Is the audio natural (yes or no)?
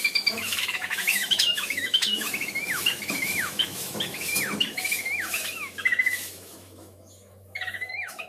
no